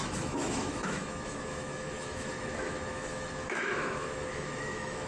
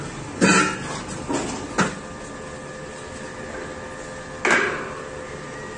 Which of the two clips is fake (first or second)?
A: first